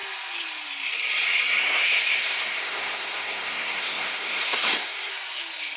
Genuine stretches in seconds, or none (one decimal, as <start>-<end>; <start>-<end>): 0.0-1.6; 5.1-5.8